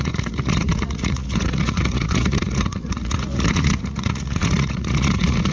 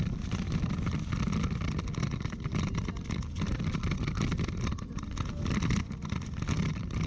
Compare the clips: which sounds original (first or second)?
second